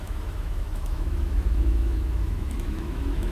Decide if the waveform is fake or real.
fake